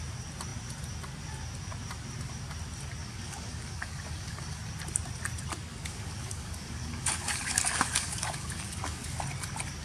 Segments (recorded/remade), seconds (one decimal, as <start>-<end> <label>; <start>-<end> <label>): 0.0-3.0 recorded; 3.0-4.7 remade; 4.7-5.7 recorded; 5.7-9.2 remade; 9.2-9.8 recorded